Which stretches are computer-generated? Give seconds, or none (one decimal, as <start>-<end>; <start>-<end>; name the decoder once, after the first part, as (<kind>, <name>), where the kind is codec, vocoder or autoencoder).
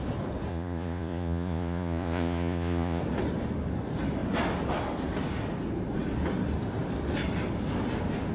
0.5-3.0 (vocoder, Vocos)